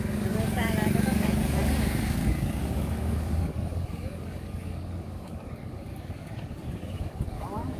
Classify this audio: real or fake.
fake